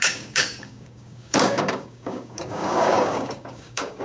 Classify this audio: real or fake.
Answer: fake